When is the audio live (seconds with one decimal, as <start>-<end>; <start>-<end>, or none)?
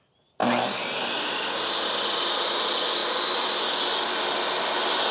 0.0-5.1